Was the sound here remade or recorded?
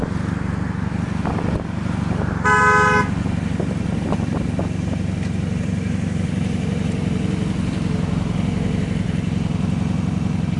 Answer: recorded